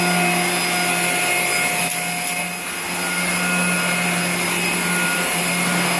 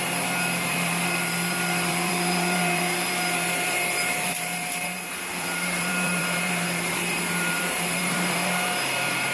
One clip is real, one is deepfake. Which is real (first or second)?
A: first